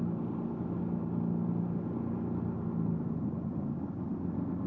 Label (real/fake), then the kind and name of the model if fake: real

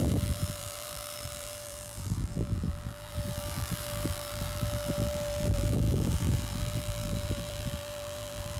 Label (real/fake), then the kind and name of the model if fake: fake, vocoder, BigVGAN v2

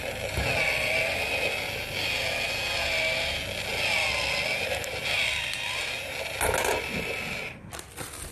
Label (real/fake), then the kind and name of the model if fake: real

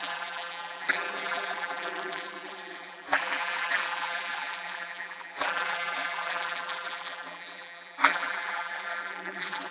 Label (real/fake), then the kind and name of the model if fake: fake, vocoder, BigVGAN v2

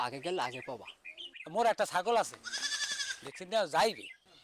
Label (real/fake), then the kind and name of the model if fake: real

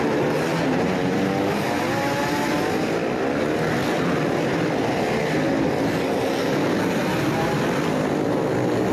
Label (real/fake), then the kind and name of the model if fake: real